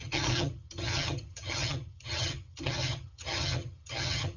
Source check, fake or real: fake